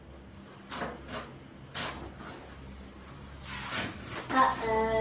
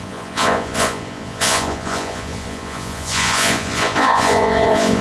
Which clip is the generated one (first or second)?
second